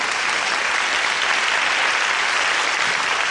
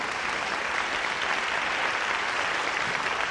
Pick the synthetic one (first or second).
second